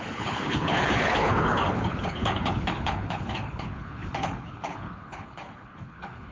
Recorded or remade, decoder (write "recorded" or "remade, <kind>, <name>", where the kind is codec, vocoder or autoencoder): remade, codec, HILCodec